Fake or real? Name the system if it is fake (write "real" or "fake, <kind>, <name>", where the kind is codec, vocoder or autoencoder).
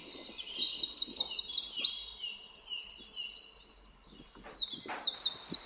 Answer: real